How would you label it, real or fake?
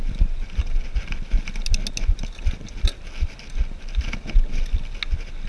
real